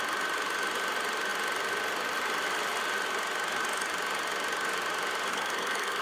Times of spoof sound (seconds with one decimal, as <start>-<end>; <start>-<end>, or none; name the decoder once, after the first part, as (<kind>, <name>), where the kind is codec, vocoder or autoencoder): 5.3-6.0 (codec, SNAC)